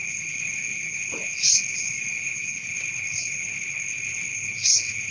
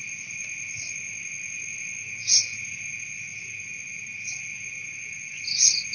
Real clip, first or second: second